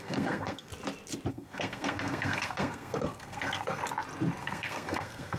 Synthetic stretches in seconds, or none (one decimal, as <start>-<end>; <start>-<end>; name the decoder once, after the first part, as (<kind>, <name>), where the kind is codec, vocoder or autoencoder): 0.0-0.7 (codec, SNAC); 1.3-3.8; 4.4-5.4